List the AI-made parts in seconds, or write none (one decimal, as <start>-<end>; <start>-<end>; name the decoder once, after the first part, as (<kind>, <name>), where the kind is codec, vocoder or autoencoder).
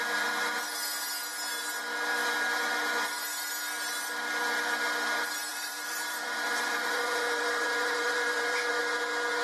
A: 5.5-8.7 (vocoder, BigVGAN v2)